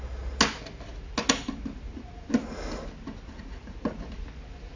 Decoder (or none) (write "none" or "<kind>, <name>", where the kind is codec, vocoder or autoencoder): none